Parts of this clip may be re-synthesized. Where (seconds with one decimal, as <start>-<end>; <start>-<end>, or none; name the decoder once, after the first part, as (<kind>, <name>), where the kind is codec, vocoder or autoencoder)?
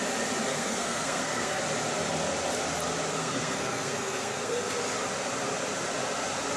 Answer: 0.5-1.6 (codec, SNAC); 3.1-4.7